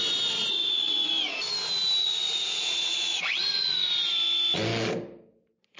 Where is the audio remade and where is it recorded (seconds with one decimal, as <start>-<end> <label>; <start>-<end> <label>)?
0.0-0.5 recorded; 0.5-1.1 remade; 1.1-2.0 recorded; 2.0-3.9 remade; 3.9-5.8 recorded